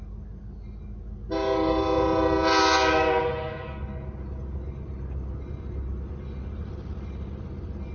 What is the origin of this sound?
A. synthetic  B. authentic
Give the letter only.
B